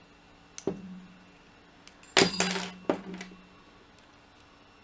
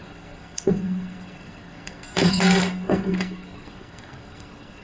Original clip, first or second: first